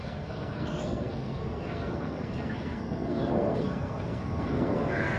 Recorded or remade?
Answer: remade